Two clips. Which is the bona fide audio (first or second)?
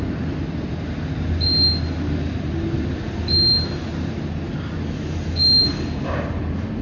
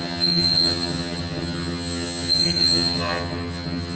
first